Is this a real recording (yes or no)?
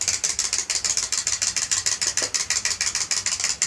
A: yes